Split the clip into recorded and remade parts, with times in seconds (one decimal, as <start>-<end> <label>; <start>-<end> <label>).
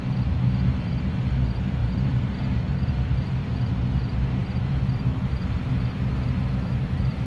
0.0-1.8 recorded; 1.8-2.7 remade; 2.7-4.4 recorded; 4.4-5.7 remade; 5.7-7.3 recorded